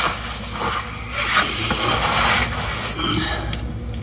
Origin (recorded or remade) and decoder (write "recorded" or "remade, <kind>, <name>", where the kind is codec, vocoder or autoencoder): recorded